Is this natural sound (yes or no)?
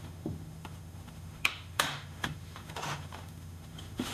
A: no